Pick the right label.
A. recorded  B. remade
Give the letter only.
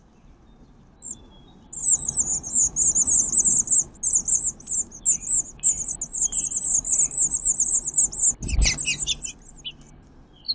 A